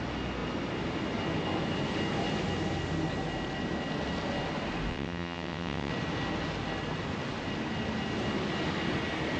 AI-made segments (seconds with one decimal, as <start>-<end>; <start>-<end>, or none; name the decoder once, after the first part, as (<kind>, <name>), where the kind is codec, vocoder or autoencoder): 4.9-5.9 (vocoder, WaveNeXt)